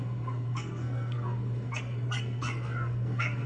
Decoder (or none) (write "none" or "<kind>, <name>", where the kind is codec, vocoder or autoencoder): codec, SNAC